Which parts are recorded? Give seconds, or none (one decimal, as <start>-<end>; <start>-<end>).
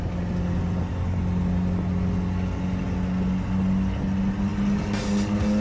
0.0-5.6